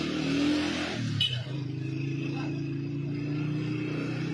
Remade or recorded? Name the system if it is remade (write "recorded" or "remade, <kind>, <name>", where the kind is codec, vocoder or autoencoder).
recorded